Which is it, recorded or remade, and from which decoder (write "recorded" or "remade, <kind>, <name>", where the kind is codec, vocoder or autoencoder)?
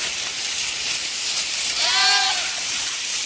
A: recorded